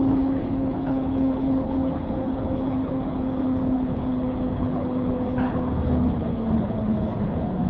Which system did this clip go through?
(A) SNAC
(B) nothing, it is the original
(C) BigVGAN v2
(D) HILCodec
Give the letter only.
D